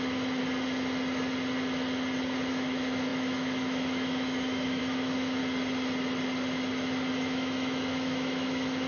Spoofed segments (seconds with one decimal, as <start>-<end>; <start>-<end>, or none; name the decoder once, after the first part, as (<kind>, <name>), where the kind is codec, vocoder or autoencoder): 0.0-0.4 (autoencoder, DAC-VAE); 2.5-5.4; 7.1-8.9